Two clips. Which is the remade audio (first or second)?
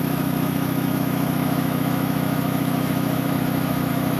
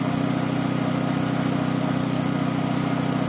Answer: first